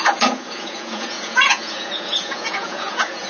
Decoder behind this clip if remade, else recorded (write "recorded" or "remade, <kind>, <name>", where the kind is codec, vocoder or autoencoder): remade, vocoder, Vocos